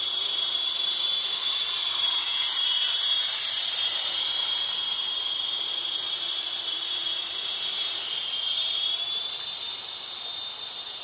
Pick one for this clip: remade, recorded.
remade